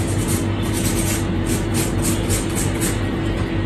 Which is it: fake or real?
real